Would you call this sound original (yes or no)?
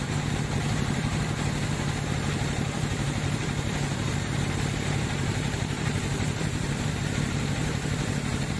no